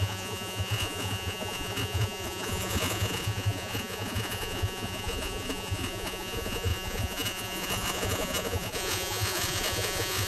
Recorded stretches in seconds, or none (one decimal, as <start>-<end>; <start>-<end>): none